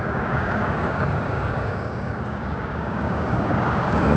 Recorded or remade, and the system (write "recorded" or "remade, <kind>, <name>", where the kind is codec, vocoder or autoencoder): remade, codec, DAC